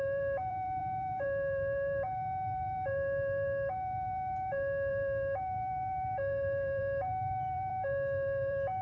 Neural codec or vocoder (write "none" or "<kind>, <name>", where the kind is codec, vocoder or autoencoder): vocoder, BigVGAN v2